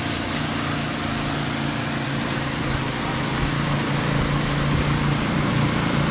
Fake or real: real